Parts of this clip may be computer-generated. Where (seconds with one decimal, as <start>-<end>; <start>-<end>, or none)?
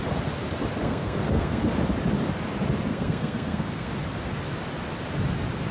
0.8-1.6; 2.9-3.9